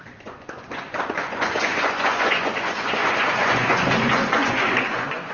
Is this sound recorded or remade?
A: remade